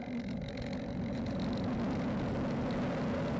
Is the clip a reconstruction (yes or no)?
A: no